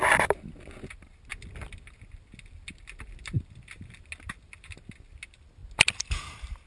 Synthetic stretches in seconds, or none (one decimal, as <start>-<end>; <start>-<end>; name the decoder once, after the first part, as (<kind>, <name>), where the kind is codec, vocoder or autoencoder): none